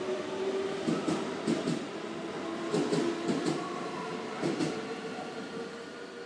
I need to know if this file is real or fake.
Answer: real